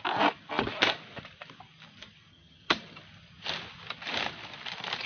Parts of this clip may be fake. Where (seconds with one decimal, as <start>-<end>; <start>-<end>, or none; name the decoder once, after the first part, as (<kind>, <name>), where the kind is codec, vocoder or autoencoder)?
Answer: 2.3-3.0 (vocoder, HiFi-GAN)